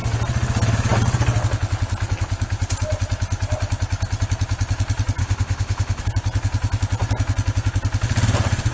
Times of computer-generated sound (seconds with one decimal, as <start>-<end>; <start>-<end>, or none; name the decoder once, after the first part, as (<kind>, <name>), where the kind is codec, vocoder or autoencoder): 5.2-6.0 (autoencoder, DAC-VAE)